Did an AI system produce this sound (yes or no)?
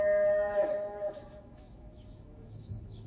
yes